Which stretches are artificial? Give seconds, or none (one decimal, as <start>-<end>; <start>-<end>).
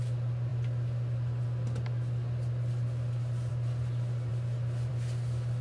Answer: none